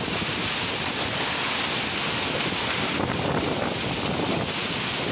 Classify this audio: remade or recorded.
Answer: recorded